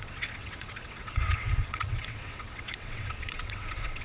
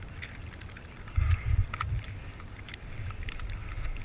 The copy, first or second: first